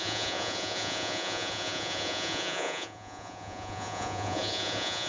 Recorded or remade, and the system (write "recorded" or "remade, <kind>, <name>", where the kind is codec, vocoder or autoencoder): remade, vocoder, Vocos